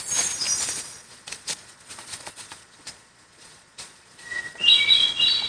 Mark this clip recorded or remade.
remade